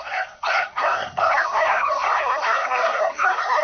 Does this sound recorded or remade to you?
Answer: remade